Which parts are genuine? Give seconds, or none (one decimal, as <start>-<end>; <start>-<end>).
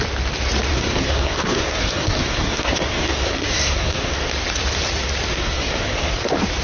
0.0-0.7; 4.3-5.3; 6.1-6.6